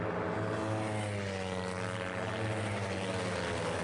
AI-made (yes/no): no